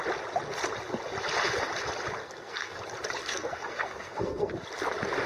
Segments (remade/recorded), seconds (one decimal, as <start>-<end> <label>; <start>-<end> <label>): 0.0-2.2 recorded; 2.2-2.8 remade; 2.8-3.2 recorded; 3.2-4.5 remade; 4.5-5.3 recorded